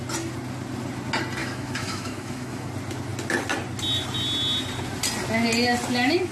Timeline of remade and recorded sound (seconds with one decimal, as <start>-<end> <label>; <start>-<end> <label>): 0.0-1.4 recorded; 1.4-2.7 remade; 2.7-6.3 recorded